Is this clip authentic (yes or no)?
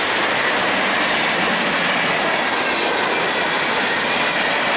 yes